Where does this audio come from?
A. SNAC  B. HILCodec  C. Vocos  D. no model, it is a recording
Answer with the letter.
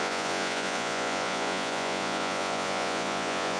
C